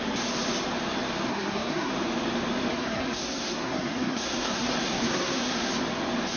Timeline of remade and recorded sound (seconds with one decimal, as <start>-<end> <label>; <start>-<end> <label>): 0.0-1.3 recorded; 1.3-1.9 remade; 1.9-2.7 recorded; 2.7-5.7 remade; 5.7-6.4 recorded